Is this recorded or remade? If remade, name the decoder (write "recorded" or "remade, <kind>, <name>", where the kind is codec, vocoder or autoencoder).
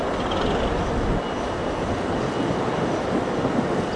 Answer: recorded